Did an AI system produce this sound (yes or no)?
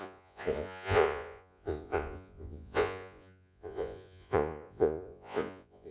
yes